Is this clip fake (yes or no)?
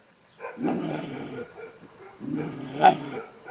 yes